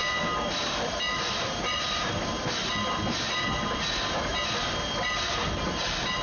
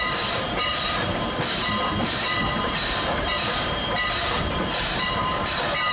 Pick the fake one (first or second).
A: second